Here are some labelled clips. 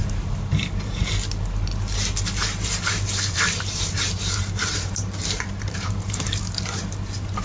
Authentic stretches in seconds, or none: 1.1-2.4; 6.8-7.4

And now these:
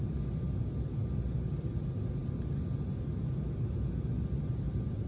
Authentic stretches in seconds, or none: 0.0-5.1

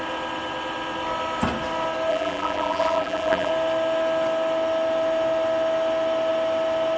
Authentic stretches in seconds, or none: 0.0-2.1; 3.5-7.0

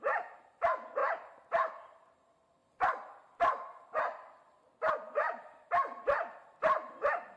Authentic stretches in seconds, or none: 0.0-1.0; 1.7-2.6; 6.6-7.4

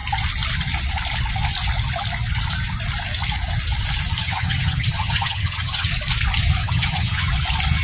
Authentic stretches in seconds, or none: 0.0-4.2; 5.9-6.6; 7.3-7.8

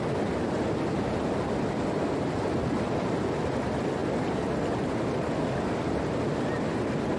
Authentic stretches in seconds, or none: 0.0-7.2